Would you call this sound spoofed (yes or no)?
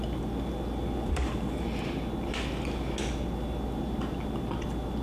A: no